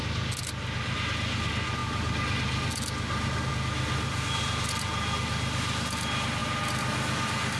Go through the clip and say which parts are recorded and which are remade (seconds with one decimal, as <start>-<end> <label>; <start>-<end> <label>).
0.0-7.6 recorded